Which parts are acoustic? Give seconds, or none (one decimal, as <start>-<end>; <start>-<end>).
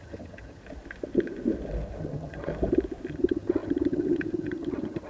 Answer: 0.6-2.0; 2.5-3.1